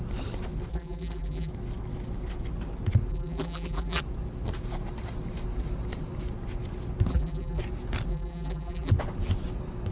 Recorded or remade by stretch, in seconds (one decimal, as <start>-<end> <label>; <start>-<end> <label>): 0.0-0.7 recorded; 0.7-1.5 remade; 1.5-3.1 recorded; 3.1-4.0 remade; 4.0-7.1 recorded; 7.1-7.6 remade; 7.6-8.1 recorded; 8.1-8.9 remade; 8.9-9.9 recorded